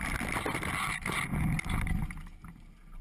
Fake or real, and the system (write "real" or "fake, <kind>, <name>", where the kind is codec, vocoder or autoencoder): real